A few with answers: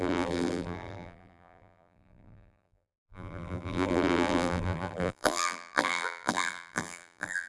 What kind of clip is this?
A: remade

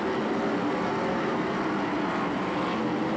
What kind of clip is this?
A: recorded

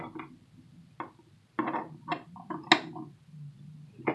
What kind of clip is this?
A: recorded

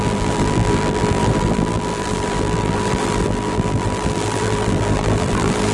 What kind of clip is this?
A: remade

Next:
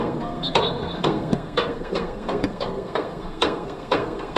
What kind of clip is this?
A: remade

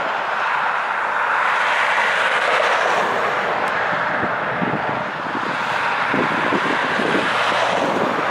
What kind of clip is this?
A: recorded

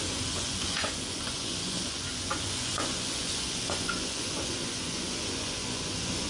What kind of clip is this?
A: remade